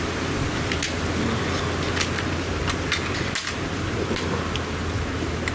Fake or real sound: real